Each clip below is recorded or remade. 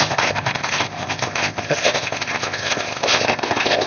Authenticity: remade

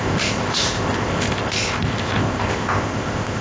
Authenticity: remade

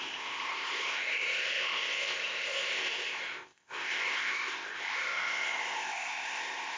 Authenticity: remade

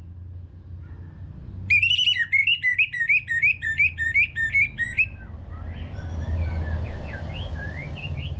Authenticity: recorded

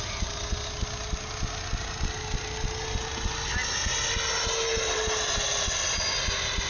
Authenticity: recorded